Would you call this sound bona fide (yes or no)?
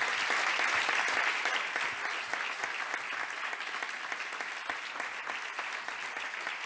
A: yes